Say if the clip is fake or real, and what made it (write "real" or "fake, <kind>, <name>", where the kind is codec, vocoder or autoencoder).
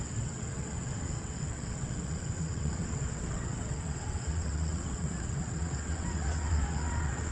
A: fake, vocoder, WaveNeXt